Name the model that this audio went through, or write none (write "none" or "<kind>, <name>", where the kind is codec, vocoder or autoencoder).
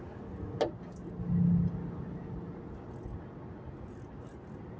none